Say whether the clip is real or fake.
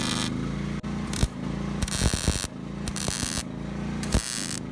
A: real